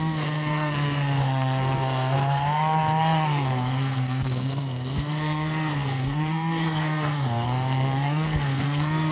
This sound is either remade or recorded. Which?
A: remade